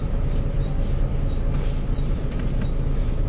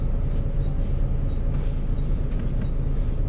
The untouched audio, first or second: second